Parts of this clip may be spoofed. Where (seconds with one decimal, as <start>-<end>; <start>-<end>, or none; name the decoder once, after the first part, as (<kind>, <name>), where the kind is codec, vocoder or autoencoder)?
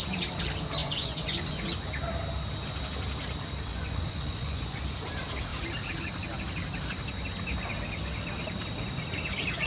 0.8-1.6 (vocoder, Vocos); 3.7-4.8